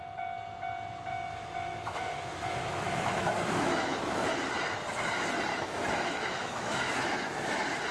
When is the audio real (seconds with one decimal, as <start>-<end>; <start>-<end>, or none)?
0.0-1.1; 4.3-5.5; 7.5-7.9